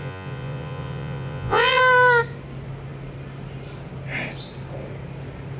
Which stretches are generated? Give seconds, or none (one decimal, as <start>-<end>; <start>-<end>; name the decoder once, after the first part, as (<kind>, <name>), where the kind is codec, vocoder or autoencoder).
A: 0.0-1.8 (vocoder, Vocos)